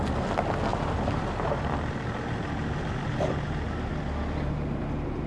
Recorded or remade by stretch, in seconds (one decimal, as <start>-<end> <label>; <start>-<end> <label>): 0.0-0.7 recorded; 0.7-3.9 remade; 3.9-5.3 recorded